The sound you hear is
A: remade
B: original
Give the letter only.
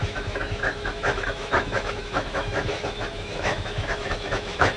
A